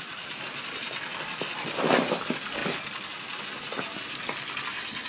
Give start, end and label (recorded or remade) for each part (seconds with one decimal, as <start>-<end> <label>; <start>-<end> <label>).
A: 0.0-5.1 recorded